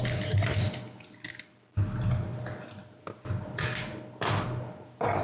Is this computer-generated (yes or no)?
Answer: no